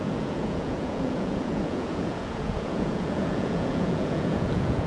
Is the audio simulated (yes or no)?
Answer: yes